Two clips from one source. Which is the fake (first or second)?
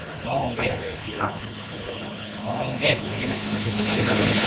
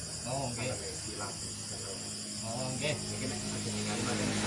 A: first